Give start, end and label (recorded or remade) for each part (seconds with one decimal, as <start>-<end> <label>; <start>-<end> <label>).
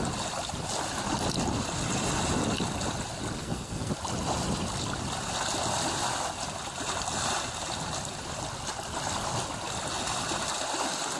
0.0-3.4 recorded; 3.4-3.9 remade; 3.9-11.2 recorded